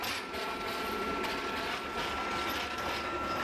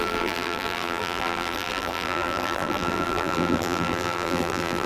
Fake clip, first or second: second